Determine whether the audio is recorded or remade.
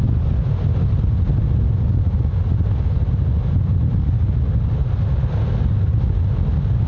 recorded